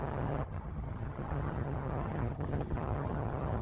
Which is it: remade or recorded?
remade